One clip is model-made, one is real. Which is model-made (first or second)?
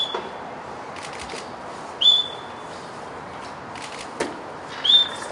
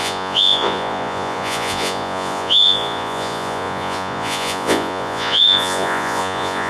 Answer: second